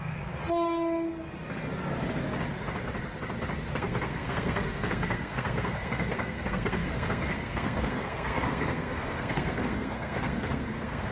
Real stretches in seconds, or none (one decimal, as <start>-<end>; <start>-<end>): 0.4-3.7